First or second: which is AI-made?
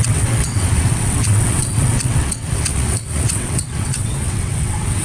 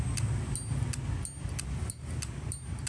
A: first